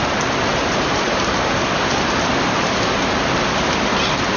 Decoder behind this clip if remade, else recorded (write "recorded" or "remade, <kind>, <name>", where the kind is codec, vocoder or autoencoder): recorded